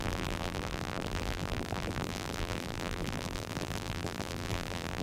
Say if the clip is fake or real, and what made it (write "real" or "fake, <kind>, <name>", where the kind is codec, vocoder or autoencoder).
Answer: fake, vocoder, BigVGAN v2